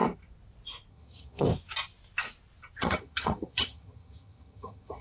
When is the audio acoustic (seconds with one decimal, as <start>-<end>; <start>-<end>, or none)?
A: 0.0-0.9; 1.5-2.8